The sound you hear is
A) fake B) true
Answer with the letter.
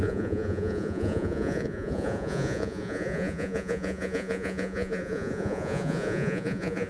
A